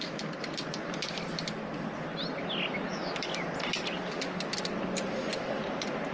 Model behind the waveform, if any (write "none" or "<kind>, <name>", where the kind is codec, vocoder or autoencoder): none